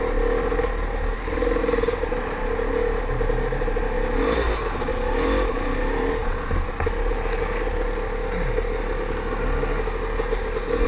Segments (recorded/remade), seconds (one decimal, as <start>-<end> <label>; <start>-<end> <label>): 0.0-10.9 recorded